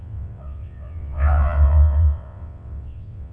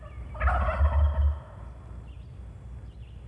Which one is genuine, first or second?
second